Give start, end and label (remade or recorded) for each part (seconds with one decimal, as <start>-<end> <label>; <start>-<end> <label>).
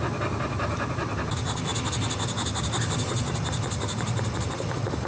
0.0-5.1 recorded